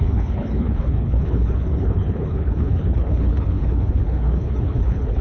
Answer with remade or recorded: remade